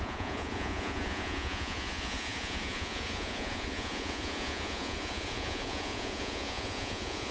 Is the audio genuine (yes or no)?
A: no